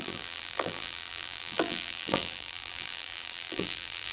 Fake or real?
fake